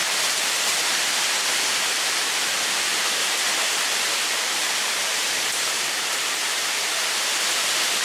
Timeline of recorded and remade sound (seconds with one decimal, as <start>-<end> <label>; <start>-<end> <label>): 0.0-0.7 remade; 0.7-3.2 recorded; 3.2-7.5 remade; 7.5-8.0 recorded